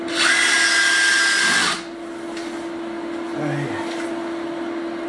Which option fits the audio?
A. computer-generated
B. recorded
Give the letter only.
B